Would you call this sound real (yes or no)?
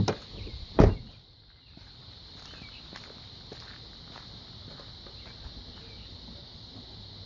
yes